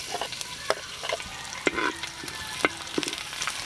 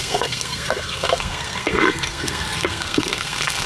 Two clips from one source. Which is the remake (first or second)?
second